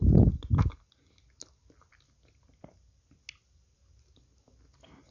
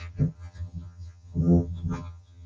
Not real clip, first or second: second